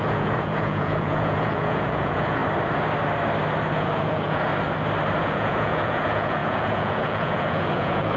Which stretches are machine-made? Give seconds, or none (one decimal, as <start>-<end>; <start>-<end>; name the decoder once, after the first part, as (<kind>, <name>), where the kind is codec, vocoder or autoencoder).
0.0-2.4 (vocoder, Vocos); 3.7-4.5; 5.2-8.2